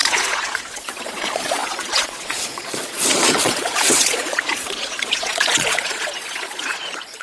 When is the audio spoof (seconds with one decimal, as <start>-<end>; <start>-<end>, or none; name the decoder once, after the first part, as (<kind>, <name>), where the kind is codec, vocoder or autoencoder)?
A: 0.0-7.2 (vocoder, Vocos)